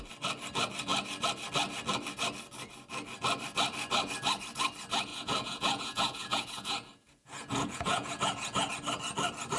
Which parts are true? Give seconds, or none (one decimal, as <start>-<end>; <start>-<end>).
0.0-5.1; 8.7-9.6